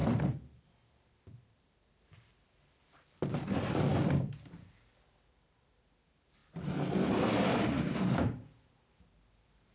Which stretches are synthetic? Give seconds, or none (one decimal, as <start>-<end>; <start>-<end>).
0.0-6.4; 8.0-9.7